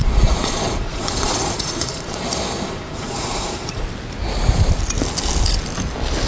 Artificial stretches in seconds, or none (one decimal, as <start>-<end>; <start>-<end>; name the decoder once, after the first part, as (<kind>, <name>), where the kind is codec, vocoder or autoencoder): 0.0-3.8 (vocoder, Vocos)

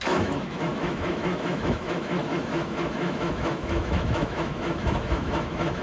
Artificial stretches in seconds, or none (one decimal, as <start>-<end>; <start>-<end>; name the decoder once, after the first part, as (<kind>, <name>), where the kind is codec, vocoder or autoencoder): 0.0-5.8 (autoencoder, DAC-VAE)